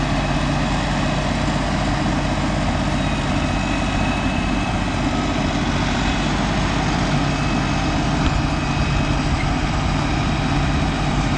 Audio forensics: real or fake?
real